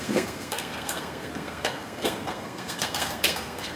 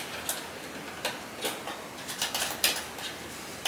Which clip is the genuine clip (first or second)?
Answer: second